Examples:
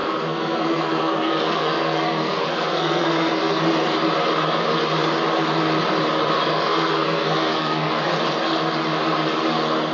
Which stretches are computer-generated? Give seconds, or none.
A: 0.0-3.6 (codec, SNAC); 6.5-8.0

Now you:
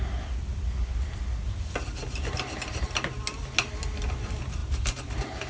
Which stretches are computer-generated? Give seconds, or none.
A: none

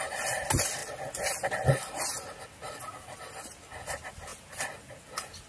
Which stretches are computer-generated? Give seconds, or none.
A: none

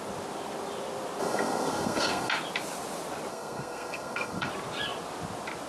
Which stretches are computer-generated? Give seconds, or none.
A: 1.2-2.3 (codec, SNAC); 3.3-4.5